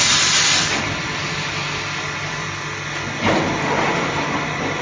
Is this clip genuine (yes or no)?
yes